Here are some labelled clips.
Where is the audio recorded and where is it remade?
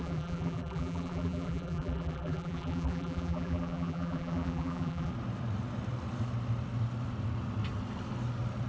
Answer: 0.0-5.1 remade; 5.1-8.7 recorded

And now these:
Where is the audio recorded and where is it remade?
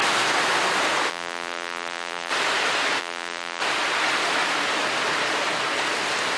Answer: 0.0-1.1 recorded; 1.1-2.3 remade; 2.3-3.0 recorded; 3.0-3.6 remade; 3.6-6.4 recorded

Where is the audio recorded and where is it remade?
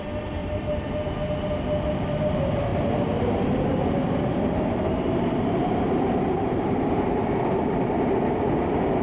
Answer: 0.0-0.4 recorded; 0.4-0.9 remade; 0.9-2.7 recorded; 2.7-7.6 remade; 7.6-9.0 recorded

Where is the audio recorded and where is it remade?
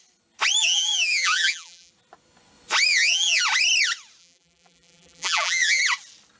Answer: 0.0-0.6 recorded; 0.6-1.9 remade; 1.9-2.9 recorded; 2.9-3.4 remade; 3.4-4.2 recorded; 4.2-5.8 remade; 5.8-6.4 recorded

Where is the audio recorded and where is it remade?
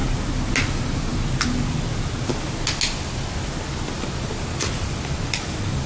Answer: 0.0-5.9 recorded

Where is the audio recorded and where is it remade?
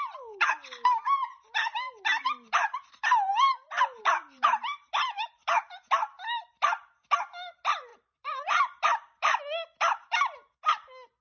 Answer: 0.0-2.2 recorded; 2.2-5.9 remade; 5.9-7.9 recorded; 7.9-9.4 remade; 9.4-11.2 recorded